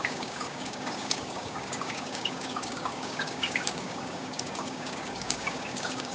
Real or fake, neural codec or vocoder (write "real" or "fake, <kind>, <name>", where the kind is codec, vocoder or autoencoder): fake, codec, DAC